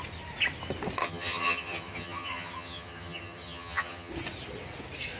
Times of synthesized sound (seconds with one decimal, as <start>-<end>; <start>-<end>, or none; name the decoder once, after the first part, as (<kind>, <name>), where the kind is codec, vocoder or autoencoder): 1.0-4.1 (vocoder, HiFi-GAN)